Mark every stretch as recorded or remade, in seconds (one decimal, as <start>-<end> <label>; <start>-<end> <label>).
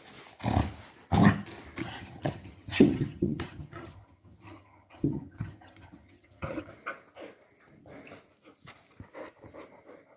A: 0.0-1.8 recorded; 1.8-6.7 remade; 6.7-10.2 recorded